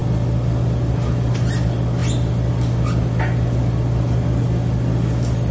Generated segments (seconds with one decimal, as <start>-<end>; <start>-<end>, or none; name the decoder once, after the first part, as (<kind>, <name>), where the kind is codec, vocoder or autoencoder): none